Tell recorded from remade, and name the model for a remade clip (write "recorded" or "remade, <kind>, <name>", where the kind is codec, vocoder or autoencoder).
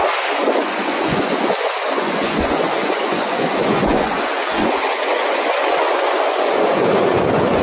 remade, vocoder, Vocos